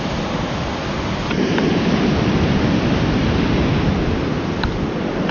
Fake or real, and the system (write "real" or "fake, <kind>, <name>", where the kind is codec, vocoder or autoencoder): real